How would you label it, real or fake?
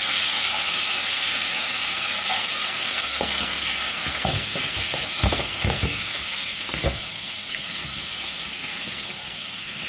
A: fake